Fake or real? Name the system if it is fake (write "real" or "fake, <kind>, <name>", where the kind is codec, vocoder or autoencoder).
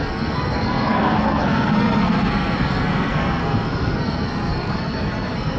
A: fake, codec, SNAC